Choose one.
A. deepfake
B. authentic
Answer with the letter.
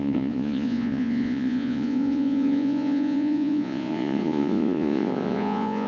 A